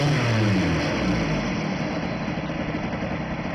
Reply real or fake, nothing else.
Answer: real